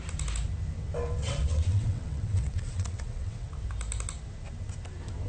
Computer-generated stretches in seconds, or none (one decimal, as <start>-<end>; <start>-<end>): 1.2-3.5